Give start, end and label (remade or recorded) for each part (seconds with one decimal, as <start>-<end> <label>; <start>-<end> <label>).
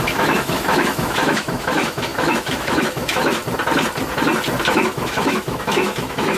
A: 0.0-3.4 remade; 3.4-4.7 recorded; 4.7-6.4 remade